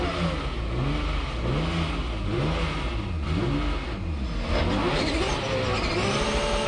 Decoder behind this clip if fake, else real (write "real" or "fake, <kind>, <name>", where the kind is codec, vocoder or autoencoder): real